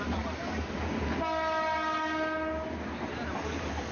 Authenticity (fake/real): real